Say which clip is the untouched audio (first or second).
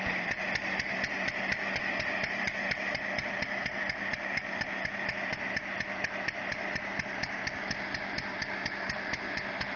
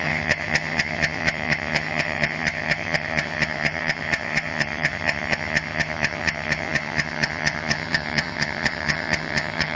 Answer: first